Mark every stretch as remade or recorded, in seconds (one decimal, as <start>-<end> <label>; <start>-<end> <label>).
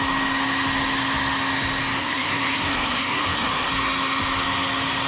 0.0-2.0 recorded; 2.0-3.7 remade; 3.7-5.1 recorded